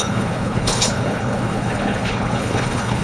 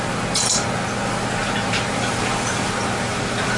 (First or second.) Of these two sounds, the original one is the second